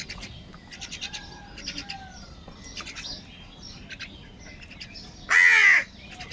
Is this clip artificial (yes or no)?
no